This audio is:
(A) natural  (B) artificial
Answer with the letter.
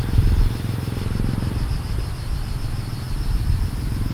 B